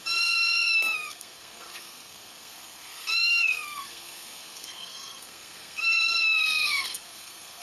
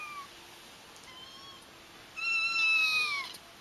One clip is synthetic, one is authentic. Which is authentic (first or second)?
second